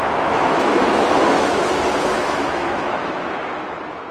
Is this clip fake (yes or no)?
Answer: yes